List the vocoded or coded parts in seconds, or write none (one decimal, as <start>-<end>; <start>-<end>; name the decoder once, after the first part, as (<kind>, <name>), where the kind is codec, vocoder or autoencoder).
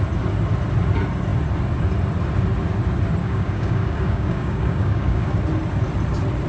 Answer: 3.2-5.4 (codec, DAC)